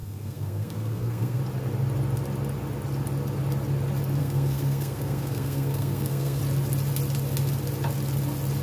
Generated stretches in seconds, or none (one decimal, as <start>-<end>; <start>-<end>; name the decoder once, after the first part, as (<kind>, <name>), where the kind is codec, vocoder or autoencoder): 0.0-1.4 (codec, SNAC); 4.2-6.4